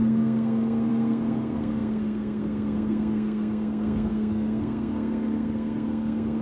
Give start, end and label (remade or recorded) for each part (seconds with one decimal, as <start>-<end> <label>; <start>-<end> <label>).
0.0-6.4 remade